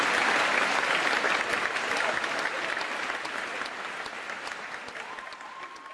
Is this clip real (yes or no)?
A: yes